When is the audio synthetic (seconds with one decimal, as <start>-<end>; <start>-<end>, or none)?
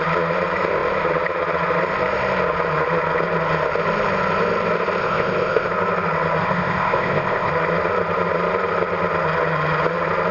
5.0-5.7; 6.4-7.5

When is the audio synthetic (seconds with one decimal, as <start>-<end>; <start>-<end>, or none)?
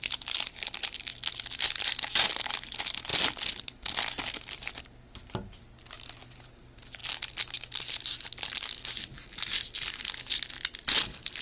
none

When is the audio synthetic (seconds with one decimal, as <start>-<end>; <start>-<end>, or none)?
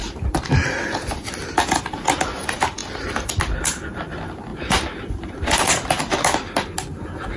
4.5-5.7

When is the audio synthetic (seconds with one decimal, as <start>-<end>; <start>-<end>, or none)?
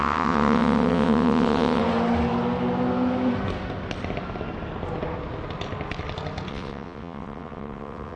0.0-1.8; 6.5-8.2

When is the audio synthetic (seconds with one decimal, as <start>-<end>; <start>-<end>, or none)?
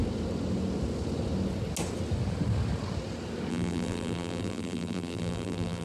3.5-5.8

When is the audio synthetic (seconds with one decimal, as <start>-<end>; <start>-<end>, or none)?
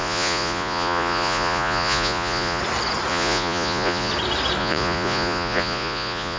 0.0-2.6; 3.1-4.1; 4.6-6.4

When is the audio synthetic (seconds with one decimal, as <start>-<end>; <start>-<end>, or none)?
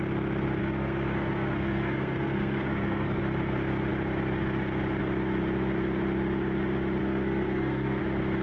0.6-3.2; 7.0-8.0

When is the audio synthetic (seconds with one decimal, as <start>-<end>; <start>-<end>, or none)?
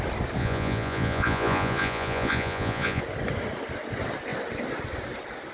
0.4-3.0